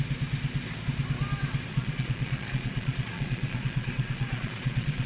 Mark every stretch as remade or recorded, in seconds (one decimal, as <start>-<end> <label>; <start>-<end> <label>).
0.0-1.7 recorded; 1.7-5.1 remade